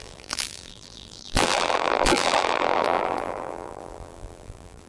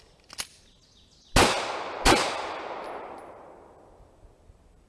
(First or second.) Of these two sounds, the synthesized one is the first